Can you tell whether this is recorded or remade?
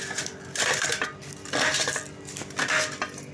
recorded